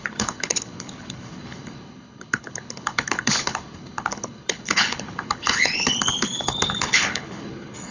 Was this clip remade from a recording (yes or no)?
yes